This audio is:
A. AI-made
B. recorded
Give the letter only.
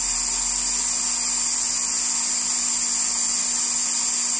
B